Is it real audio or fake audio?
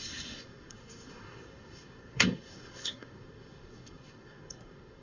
fake